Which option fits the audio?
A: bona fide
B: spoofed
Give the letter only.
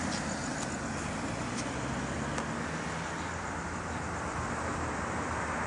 A